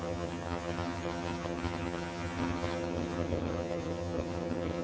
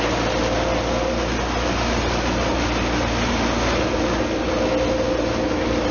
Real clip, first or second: second